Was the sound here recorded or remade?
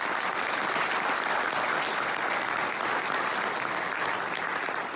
recorded